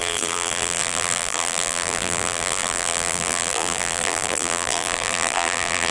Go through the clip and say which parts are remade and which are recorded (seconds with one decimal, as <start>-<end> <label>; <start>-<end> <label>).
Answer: 0.0-5.9 remade

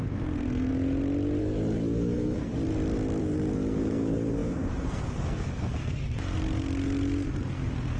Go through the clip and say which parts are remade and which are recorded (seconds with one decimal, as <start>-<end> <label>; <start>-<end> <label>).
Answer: 0.0-0.7 remade; 0.7-1.4 recorded; 1.4-2.5 remade; 2.5-3.2 recorded; 3.2-6.0 remade; 6.0-7.5 recorded; 7.5-8.0 remade

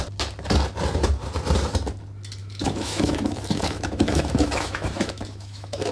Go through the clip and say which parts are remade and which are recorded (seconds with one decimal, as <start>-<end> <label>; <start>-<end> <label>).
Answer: 0.0-2.4 recorded; 2.4-5.9 remade

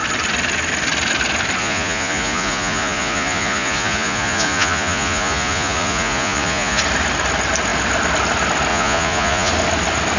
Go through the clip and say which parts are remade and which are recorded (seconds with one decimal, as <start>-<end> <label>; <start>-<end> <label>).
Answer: 0.0-1.6 recorded; 1.6-6.8 remade; 6.8-8.7 recorded; 8.7-9.5 remade; 9.5-10.2 recorded

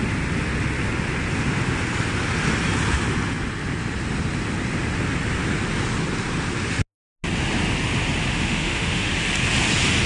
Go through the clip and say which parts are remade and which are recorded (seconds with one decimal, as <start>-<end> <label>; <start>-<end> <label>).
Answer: 0.0-8.3 recorded; 8.3-9.1 remade; 9.1-10.1 recorded

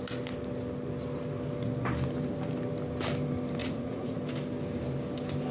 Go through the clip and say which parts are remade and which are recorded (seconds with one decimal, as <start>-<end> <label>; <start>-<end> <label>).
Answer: 0.0-3.6 recorded; 3.6-4.2 remade; 4.2-5.5 recorded

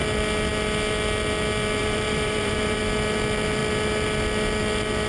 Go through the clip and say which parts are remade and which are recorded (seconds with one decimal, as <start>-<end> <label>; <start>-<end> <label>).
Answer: 0.0-1.8 recorded; 1.8-2.8 remade; 2.8-5.1 recorded